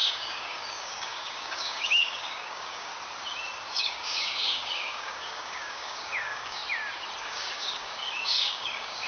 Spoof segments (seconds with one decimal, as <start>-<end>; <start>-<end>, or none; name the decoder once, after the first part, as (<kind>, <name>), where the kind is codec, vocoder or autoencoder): 0.0-2.9 (codec, DAC); 3.7-6.6; 7.2-9.1